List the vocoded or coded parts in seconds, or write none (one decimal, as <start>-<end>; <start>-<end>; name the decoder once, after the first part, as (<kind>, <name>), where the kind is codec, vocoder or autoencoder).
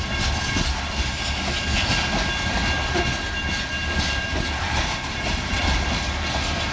3.8-5.6 (vocoder, BigVGAN v2)